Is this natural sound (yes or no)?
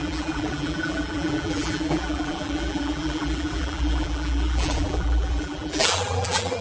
no